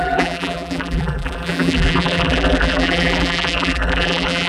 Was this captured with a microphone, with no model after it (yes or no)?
no